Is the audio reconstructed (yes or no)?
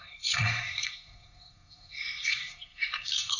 yes